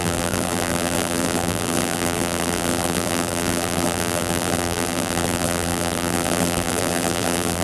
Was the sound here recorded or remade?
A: remade